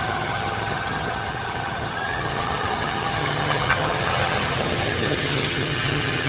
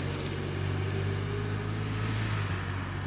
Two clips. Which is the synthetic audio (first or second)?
first